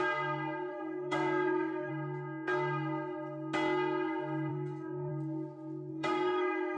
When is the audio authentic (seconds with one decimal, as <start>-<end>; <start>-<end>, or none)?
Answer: 0.0-0.7; 1.9-4.5; 5.1-5.9